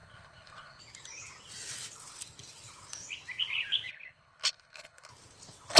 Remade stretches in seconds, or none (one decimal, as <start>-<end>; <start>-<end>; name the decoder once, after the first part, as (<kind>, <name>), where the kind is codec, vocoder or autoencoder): 0.0-0.8 (codec, HILCodec); 3.9-5.1